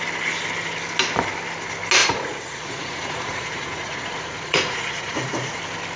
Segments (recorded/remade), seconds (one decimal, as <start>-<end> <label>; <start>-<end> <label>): 0.0-2.0 recorded; 2.0-5.6 remade; 5.6-6.0 recorded